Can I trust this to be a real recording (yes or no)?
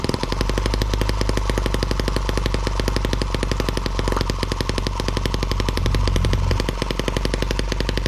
yes